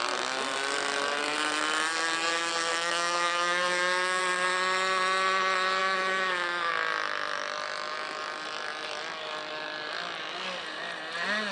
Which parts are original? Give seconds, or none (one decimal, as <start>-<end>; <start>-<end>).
0.0-2.7; 4.2-5.8; 6.7-11.5